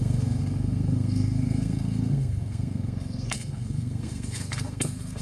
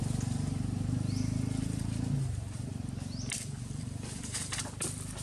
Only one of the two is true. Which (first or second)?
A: second